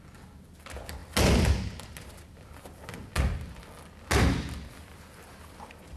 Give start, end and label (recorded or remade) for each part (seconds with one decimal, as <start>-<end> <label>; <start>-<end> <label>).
0.0-6.0 recorded

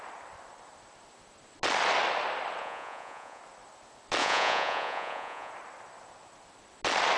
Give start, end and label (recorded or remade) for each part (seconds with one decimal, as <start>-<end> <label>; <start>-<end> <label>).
0.0-2.6 recorded; 2.6-3.4 remade; 3.4-4.2 recorded; 4.2-5.5 remade; 5.5-7.2 recorded

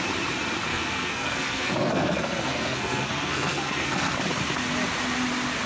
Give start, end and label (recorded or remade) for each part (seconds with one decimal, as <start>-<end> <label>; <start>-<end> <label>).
0.0-0.7 recorded; 0.7-4.1 remade; 4.1-5.7 recorded

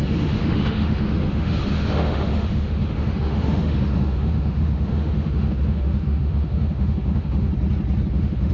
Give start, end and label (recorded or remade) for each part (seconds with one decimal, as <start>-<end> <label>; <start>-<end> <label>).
0.0-7.5 remade; 7.5-8.1 recorded; 8.1-8.5 remade

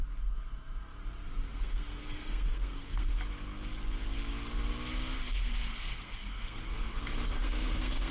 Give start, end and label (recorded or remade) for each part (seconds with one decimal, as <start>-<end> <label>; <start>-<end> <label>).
0.0-1.5 recorded; 1.5-3.1 remade; 3.1-5.3 recorded; 5.3-8.1 remade